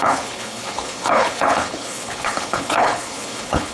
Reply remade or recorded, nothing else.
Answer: remade